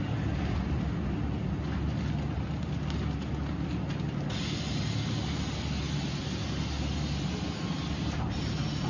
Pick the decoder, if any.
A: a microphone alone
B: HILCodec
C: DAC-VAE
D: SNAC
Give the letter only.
A